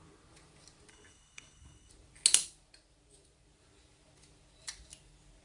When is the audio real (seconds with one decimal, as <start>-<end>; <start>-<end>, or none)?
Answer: 0.0-0.9; 1.9-5.4